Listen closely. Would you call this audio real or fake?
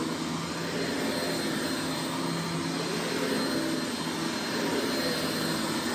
real